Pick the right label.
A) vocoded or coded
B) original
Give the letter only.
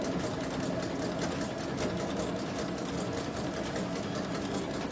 B